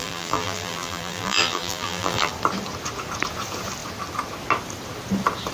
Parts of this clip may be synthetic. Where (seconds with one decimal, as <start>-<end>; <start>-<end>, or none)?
0.0-2.3